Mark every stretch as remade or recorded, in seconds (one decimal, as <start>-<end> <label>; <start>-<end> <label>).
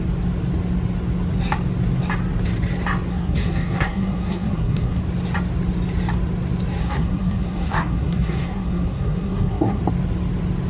0.0-3.1 recorded; 3.1-5.0 remade; 5.0-6.8 recorded; 6.8-9.8 remade; 9.8-10.7 recorded